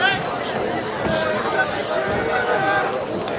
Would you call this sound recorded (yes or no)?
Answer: yes